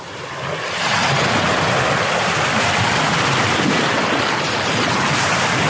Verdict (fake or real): real